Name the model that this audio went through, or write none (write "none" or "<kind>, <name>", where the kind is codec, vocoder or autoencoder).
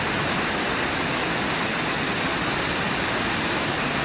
none